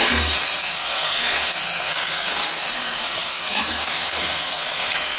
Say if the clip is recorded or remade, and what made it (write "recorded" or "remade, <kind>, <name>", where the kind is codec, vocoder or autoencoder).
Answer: remade, codec, SNAC